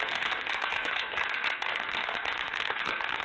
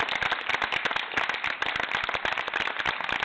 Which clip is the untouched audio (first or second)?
second